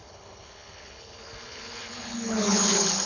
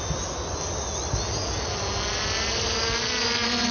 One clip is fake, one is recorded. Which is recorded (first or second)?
second